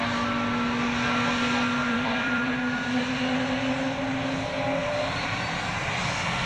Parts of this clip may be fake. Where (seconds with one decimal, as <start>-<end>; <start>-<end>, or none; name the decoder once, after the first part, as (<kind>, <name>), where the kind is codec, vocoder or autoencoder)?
1.8-2.5 (vocoder, BigVGAN v2); 4.8-5.4